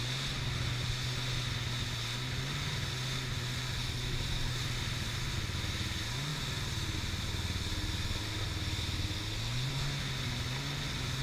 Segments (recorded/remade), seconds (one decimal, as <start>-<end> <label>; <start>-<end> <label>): 0.0-11.2 recorded